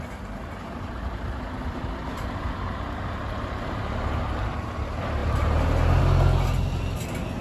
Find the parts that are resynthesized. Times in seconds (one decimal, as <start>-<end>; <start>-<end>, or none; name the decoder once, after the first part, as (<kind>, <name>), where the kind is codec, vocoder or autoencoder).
none